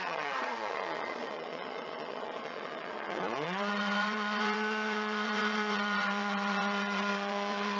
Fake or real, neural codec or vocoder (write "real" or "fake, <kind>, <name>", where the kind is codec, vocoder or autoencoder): fake, vocoder, Vocos